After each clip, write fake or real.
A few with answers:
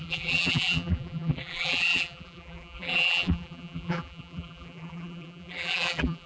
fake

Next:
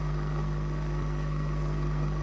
fake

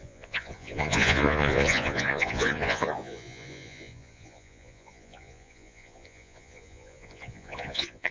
fake